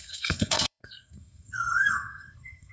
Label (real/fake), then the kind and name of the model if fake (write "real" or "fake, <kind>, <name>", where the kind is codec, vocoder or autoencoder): fake, codec, SNAC